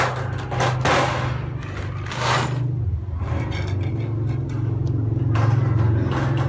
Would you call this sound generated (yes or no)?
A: no